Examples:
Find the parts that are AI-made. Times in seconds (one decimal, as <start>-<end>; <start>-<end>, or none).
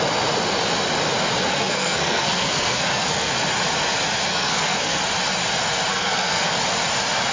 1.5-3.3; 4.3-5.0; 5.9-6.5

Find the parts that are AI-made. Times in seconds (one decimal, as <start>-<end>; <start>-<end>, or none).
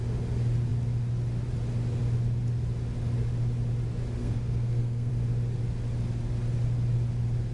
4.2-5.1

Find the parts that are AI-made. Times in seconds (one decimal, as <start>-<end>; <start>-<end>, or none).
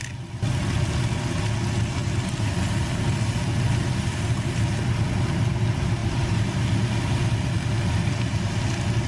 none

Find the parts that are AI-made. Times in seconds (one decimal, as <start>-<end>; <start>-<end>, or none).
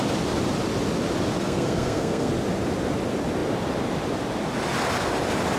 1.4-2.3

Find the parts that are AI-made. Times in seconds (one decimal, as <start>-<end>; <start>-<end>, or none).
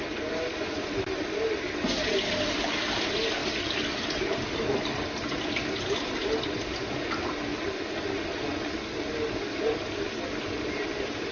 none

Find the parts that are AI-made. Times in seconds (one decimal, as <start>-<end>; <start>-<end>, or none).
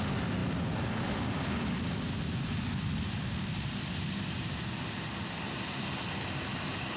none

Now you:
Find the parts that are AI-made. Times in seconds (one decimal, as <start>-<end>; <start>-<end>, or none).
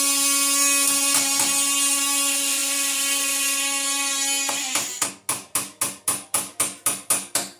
none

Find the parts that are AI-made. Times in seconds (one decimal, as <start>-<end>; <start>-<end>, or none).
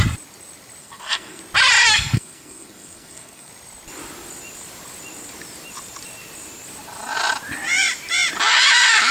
0.8-1.4; 1.8-3.5